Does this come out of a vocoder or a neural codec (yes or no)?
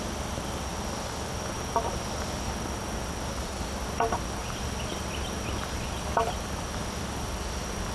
no